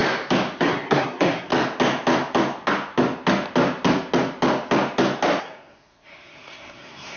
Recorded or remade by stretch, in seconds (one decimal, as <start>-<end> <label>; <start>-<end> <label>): 0.0-0.6 recorded; 0.6-1.5 remade; 1.5-5.4 recorded; 5.4-7.2 remade